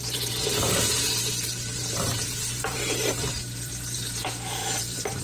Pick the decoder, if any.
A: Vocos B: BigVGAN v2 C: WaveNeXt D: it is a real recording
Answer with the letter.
B